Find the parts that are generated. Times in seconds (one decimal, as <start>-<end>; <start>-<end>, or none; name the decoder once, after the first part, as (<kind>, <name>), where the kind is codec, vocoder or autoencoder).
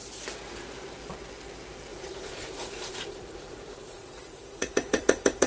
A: 1.9-5.5 (vocoder, Vocos)